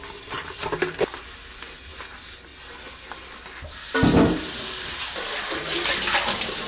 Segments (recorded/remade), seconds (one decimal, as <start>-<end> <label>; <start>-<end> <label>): 0.0-6.7 recorded